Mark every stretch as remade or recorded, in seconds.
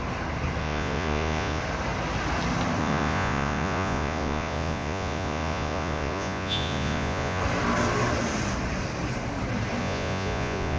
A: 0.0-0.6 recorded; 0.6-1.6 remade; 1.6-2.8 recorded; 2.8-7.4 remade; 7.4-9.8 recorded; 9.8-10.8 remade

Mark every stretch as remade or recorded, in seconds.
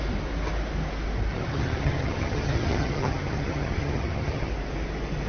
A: 0.0-1.3 recorded; 1.3-4.5 remade; 4.5-5.3 recorded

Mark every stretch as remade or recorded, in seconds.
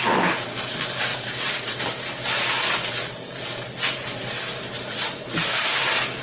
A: 0.0-1.1 recorded; 1.1-1.8 remade; 1.8-4.2 recorded; 4.2-6.2 remade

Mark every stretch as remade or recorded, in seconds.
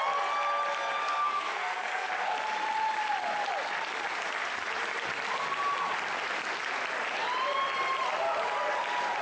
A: 0.0-1.0 recorded; 1.0-2.1 remade; 2.1-9.2 recorded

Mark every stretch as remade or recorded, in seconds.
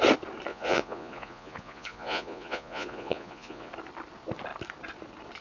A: 0.0-0.5 recorded; 0.5-3.7 remade; 3.7-5.4 recorded